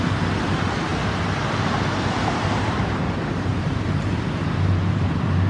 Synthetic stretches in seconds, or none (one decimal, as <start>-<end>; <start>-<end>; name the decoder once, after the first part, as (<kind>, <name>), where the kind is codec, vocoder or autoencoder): 0.9-3.0 (vocoder, BigVGAN v2); 3.5-5.5